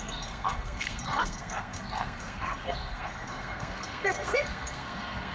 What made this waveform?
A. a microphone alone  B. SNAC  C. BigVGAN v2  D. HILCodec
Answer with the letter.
B